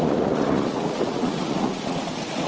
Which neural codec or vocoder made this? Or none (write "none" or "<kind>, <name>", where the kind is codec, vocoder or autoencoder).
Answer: vocoder, Vocos